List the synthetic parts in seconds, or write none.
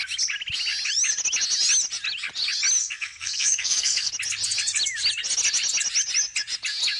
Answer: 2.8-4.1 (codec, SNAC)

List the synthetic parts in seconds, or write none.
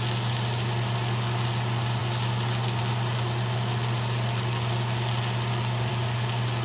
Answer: none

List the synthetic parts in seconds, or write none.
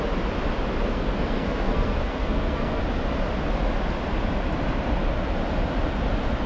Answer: 0.9-2.8 (codec, SNAC)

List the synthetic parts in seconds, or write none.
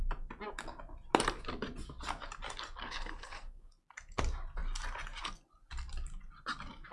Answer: 2.8-3.7 (codec, SNAC)